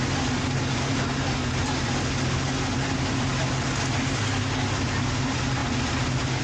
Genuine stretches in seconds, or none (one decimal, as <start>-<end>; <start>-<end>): 0.0-6.4